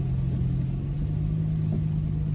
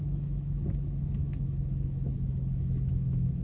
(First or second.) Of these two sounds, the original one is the first